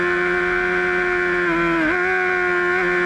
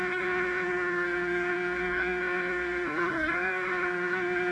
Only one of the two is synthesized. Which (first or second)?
second